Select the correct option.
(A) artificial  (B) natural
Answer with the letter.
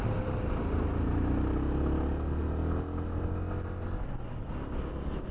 B